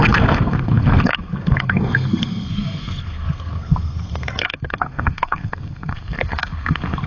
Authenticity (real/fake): fake